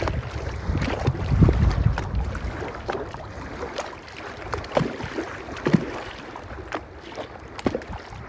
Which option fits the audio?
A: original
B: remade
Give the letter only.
A